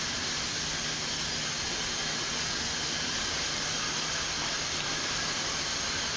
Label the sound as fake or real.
real